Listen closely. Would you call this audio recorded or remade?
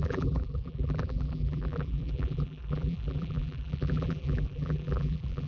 remade